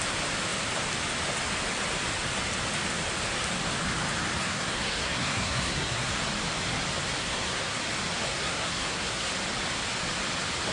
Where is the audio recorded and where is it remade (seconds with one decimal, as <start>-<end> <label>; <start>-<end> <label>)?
0.0-4.4 recorded; 4.4-6.1 remade; 6.1-7.2 recorded; 7.2-7.8 remade; 7.8-8.3 recorded; 8.3-9.3 remade; 9.3-10.7 recorded